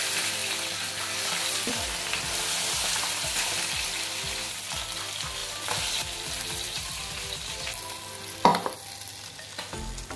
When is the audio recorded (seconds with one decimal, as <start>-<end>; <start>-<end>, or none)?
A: 0.0-5.4; 7.0-8.5; 9.1-10.2